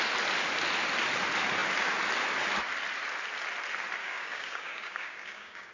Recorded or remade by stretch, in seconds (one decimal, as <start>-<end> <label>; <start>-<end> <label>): 0.0-4.0 recorded; 4.0-5.7 remade